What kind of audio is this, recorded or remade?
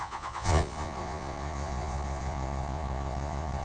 remade